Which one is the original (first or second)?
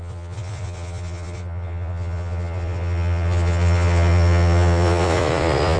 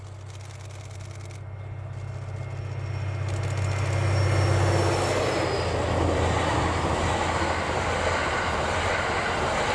second